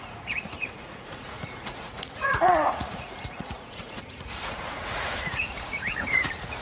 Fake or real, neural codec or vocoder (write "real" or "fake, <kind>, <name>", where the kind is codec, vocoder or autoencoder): fake, vocoder, Vocos